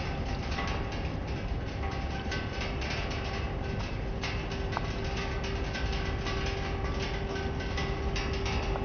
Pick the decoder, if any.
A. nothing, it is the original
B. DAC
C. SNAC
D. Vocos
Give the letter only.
A